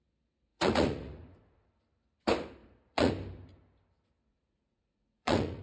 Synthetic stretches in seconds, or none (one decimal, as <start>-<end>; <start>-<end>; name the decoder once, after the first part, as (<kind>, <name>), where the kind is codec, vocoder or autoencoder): 0.5-1.7 (vocoder, Vocos); 2.6-3.1; 4.3-5.6

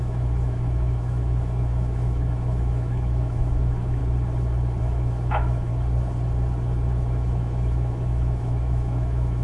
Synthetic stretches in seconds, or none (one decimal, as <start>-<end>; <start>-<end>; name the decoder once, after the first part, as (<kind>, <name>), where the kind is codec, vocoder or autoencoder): 0.0-4.0 (autoencoder, DAC-VAE); 4.8-5.7; 7.0-9.4

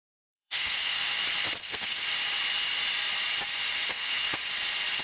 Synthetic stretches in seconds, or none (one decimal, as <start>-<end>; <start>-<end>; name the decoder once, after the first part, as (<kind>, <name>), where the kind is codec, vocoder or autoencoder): 0.0-1.0 (codec, SNAC); 1.6-2.0; 3.9-4.4

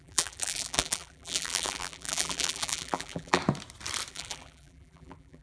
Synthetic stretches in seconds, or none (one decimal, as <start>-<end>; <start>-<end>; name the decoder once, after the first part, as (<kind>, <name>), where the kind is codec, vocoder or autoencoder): 0.0-3.4 (vocoder, BigVGAN v2); 4.1-5.4

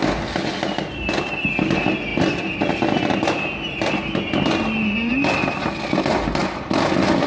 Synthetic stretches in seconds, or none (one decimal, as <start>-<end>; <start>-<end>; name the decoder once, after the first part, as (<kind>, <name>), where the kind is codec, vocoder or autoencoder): none

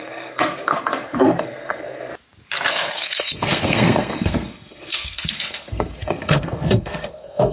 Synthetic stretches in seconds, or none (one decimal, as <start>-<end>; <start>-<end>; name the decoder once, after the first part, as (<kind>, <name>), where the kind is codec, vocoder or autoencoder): 0.0-2.1 (codec, SNAC); 2.7-7.5

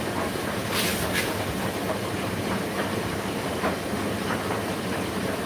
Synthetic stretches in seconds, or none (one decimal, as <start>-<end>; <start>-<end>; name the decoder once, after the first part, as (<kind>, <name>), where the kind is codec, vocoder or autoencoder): 0.0-0.9 (vocoder, BigVGAN v2); 1.9-5.5